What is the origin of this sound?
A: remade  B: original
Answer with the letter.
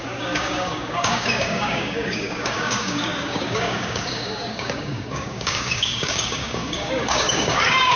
A